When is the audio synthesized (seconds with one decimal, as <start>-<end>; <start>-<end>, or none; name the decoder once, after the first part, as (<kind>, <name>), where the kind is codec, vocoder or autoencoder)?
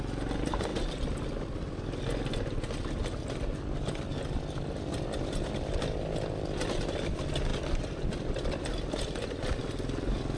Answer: none